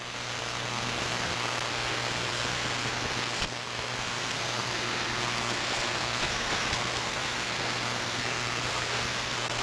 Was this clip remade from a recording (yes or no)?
yes